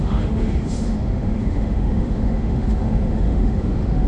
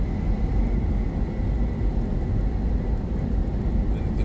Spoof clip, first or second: first